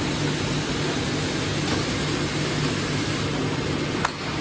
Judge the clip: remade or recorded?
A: recorded